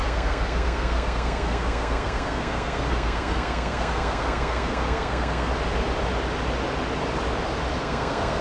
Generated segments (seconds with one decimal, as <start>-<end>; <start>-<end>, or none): 0.0-5.5; 7.8-8.4